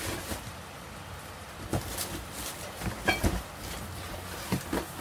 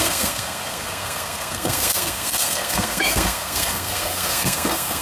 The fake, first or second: second